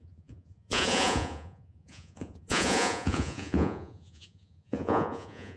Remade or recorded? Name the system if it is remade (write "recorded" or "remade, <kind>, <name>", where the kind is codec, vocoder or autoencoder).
remade, vocoder, Vocos